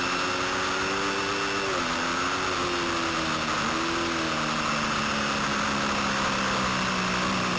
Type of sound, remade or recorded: recorded